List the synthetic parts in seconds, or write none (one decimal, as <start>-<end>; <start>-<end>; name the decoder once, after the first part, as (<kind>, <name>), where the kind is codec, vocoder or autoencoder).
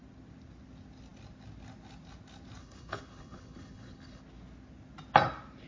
2.6-4.2 (codec, HILCodec)